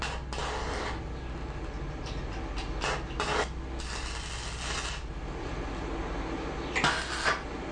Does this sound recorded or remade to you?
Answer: recorded